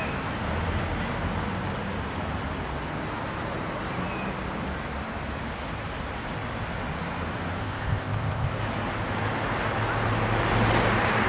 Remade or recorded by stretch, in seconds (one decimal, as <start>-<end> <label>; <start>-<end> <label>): 0.0-7.6 recorded; 7.6-8.6 remade; 8.6-11.3 recorded